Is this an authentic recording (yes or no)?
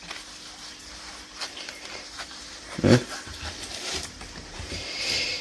no